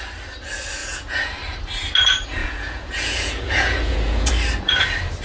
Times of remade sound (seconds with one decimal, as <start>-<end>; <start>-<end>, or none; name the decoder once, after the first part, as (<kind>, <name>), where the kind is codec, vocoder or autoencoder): 0.8-1.3 (vocoder, Vocos); 2.4-4.3